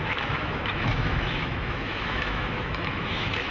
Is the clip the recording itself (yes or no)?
no